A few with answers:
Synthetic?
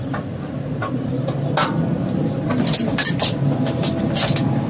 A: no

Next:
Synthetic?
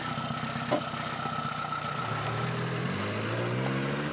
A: no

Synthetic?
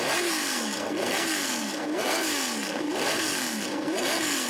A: yes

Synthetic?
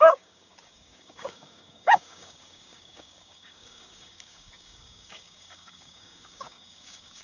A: yes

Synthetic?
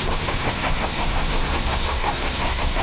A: yes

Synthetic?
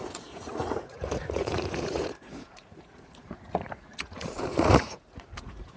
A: yes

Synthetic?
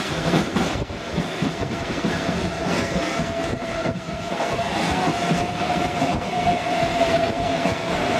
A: yes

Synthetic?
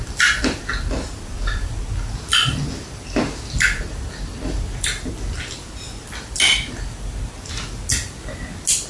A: no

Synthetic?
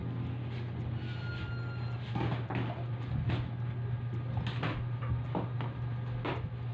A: no